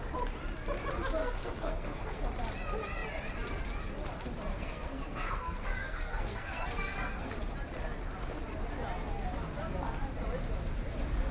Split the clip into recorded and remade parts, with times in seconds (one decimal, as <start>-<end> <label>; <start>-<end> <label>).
0.0-1.2 recorded; 1.2-2.2 remade; 2.2-4.5 recorded; 4.5-7.3 remade; 7.3-11.3 recorded